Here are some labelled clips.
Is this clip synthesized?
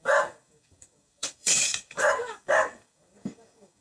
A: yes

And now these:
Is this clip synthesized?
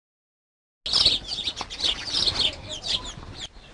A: no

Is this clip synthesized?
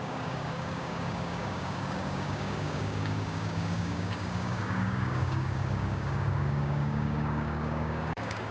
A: yes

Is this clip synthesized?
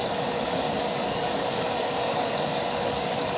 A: yes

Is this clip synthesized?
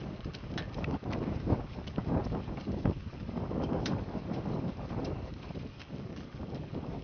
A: yes